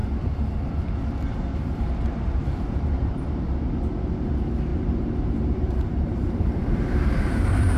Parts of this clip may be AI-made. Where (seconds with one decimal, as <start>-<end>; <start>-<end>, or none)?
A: 1.5-3.7; 4.7-7.8